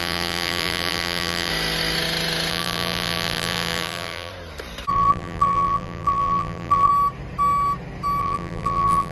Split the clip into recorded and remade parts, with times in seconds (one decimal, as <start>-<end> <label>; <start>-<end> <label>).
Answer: 0.0-1.5 remade; 1.5-2.5 recorded; 2.5-4.3 remade; 4.3-4.9 recorded; 4.9-6.9 remade; 6.9-8.2 recorded; 8.2-9.1 remade